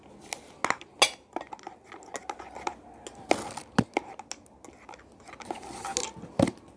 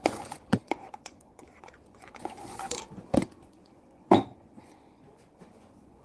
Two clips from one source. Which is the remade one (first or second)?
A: second